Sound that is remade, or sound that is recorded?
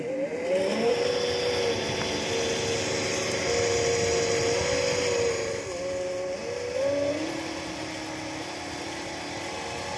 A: recorded